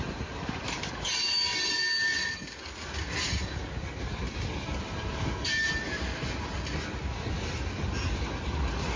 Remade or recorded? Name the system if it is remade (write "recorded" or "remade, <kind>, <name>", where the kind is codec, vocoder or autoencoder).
recorded